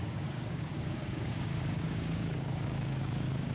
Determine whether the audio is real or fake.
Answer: fake